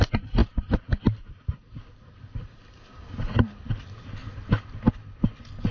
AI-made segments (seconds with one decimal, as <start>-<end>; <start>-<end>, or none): none